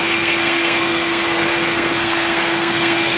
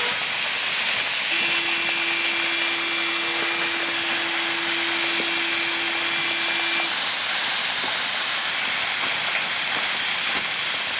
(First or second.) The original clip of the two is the second